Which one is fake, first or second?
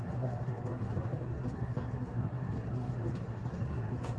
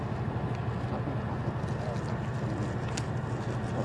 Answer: first